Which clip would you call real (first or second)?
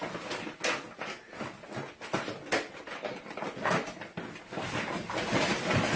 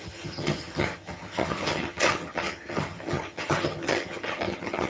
first